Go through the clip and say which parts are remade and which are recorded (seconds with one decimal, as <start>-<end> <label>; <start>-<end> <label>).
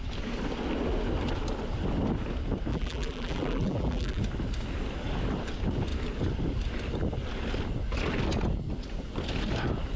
0.0-2.7 recorded; 2.7-4.2 remade; 4.2-10.0 recorded